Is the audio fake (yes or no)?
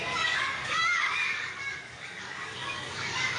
yes